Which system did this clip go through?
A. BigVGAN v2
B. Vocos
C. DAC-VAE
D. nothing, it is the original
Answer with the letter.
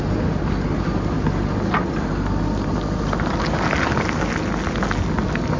D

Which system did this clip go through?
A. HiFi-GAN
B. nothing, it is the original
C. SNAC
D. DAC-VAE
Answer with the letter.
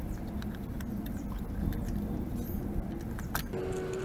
B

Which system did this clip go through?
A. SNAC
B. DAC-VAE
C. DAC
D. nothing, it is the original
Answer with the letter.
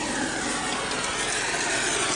D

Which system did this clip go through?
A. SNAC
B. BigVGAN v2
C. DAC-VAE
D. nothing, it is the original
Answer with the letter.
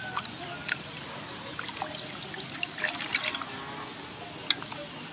D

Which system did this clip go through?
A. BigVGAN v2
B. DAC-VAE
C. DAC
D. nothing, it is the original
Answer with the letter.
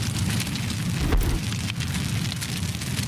D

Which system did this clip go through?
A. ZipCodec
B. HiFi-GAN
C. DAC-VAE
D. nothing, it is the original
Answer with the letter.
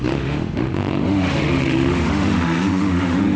C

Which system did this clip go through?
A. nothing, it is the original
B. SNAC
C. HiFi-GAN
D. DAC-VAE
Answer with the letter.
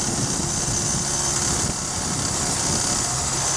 A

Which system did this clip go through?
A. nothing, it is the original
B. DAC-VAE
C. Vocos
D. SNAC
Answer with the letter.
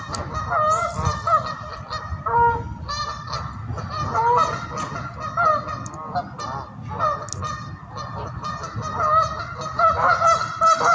A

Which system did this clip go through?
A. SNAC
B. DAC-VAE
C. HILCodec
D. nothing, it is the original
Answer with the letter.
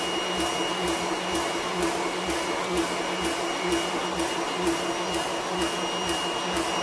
D